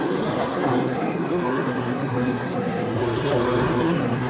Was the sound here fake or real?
fake